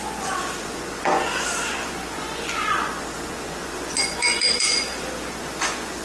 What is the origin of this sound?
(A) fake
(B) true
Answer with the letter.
A